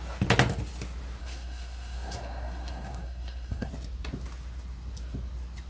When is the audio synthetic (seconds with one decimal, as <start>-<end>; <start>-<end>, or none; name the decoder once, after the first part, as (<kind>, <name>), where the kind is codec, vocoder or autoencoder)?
1.2-3.7 (codec, SNAC)